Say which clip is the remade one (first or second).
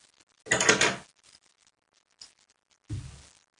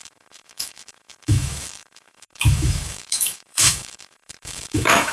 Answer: second